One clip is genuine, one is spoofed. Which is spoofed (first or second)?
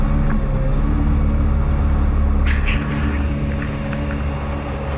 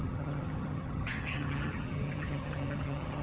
second